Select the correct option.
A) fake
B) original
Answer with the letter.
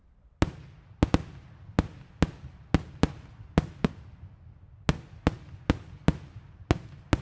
B